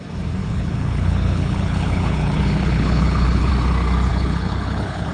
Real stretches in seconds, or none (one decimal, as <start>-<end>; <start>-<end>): 0.0-0.4; 3.5-4.1